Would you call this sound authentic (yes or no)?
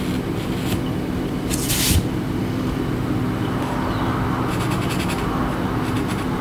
yes